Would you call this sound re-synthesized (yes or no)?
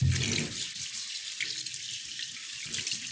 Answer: no